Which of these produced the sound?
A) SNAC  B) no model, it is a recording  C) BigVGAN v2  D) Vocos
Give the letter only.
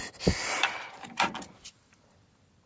B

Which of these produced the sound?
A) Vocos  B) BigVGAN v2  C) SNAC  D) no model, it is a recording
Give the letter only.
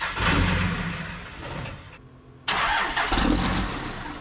D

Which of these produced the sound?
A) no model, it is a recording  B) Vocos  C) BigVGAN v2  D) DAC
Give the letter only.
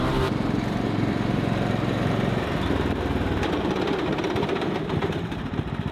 C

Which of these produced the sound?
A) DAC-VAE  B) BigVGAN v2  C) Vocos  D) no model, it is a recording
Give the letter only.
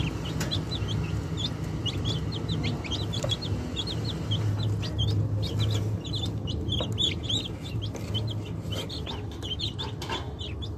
D